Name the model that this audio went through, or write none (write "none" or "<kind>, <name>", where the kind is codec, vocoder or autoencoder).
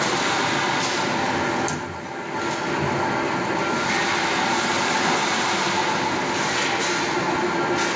none